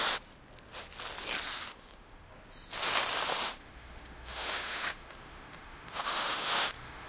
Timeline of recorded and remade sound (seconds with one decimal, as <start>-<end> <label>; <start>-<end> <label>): 0.0-1.7 recorded; 1.7-2.3 remade; 2.3-3.3 recorded; 3.3-7.1 remade